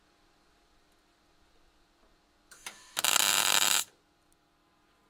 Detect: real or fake real